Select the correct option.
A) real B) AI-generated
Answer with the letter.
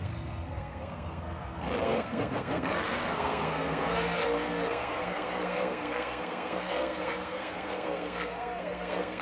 B